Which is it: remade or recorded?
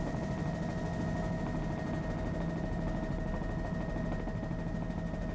recorded